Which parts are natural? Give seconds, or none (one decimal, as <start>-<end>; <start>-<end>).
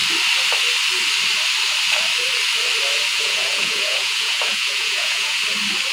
0.0-3.1; 5.4-5.9